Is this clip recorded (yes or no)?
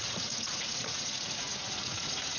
no